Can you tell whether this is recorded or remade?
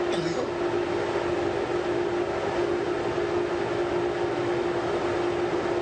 recorded